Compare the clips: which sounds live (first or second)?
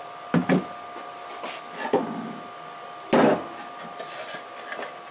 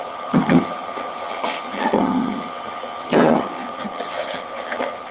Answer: first